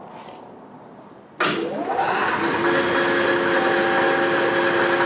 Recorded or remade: recorded